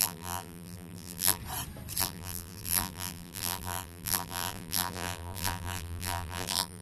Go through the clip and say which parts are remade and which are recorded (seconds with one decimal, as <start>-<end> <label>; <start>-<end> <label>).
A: 0.0-1.4 remade; 1.4-2.0 recorded; 2.0-6.8 remade